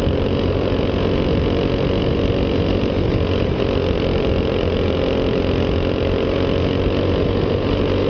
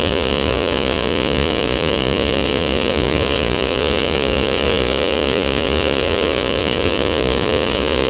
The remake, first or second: second